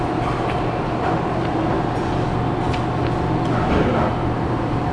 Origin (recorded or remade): recorded